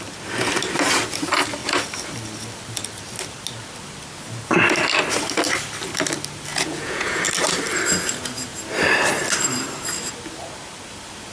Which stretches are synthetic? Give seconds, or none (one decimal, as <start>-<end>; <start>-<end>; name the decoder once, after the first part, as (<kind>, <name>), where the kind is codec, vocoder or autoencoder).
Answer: 6.5-7.2 (vocoder, Vocos)